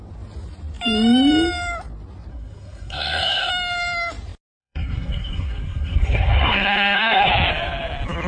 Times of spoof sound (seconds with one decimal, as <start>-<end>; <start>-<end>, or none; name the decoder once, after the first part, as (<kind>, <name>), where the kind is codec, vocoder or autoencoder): 2.3-3.5 (codec, SNAC); 4.6-7.3